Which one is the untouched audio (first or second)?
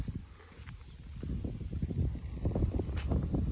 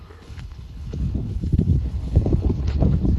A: first